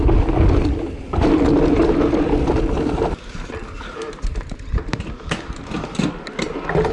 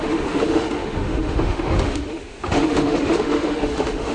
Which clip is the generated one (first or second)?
second